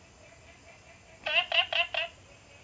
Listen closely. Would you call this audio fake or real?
real